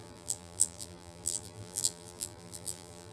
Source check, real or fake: fake